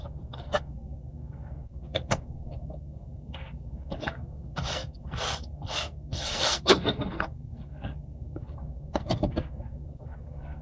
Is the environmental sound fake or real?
fake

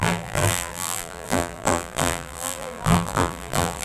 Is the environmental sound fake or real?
fake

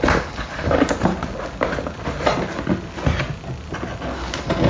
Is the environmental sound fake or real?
real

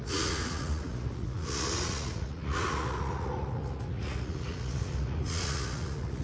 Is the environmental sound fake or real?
fake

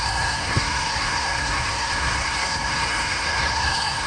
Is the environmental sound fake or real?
fake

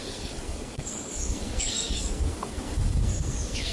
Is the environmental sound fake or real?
fake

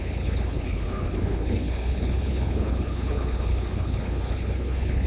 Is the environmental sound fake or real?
fake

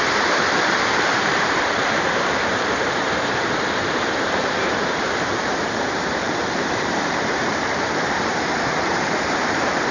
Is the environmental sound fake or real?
fake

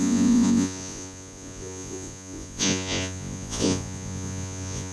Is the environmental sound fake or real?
fake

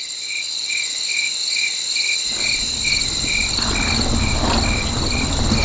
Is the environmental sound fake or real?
real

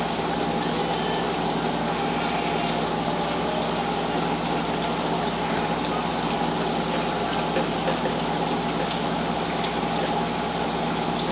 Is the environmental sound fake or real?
real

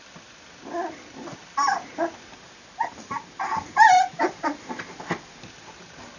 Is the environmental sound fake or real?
real